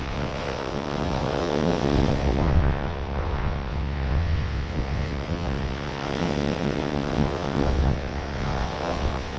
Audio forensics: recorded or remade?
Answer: remade